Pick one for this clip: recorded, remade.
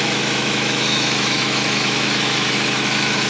remade